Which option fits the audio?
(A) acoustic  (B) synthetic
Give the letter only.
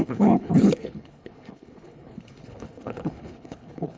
B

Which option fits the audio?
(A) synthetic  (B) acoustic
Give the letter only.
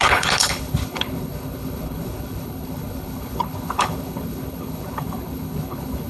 A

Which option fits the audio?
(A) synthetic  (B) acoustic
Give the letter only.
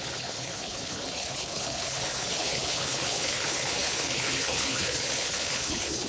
A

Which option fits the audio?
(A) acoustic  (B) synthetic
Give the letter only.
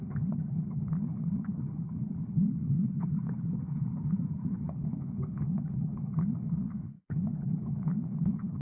B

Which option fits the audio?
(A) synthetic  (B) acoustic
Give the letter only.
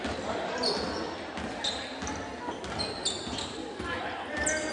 B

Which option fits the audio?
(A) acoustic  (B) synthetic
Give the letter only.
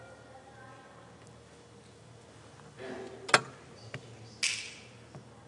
A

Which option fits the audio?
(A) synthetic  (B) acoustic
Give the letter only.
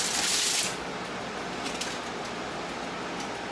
B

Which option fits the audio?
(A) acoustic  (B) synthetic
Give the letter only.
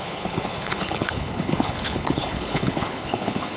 B